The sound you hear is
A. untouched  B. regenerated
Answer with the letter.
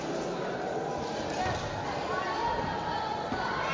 A